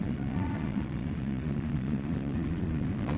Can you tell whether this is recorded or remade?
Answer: remade